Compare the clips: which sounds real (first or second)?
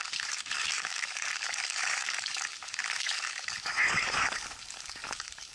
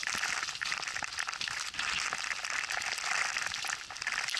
second